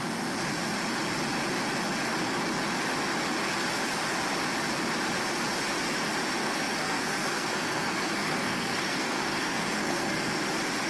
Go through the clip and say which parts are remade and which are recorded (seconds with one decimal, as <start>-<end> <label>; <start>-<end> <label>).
0.0-6.4 recorded; 6.4-10.4 remade; 10.4-10.9 recorded